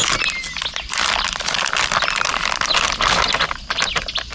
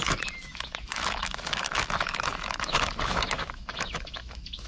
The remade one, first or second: second